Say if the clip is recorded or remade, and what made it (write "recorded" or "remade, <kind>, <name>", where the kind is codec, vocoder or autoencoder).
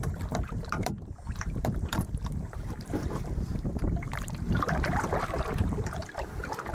remade, vocoder, BigVGAN v2